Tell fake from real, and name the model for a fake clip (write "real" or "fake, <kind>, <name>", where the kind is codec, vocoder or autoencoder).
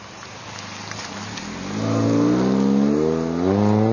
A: real